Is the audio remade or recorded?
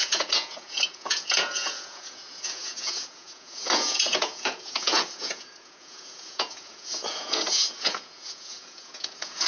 remade